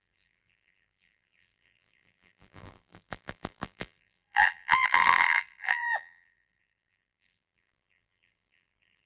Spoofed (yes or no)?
yes